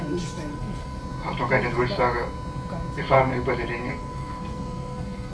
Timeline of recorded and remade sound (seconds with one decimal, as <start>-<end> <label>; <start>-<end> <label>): 0.0-0.5 recorded; 0.5-1.0 remade; 1.0-3.9 recorded; 3.9-5.3 remade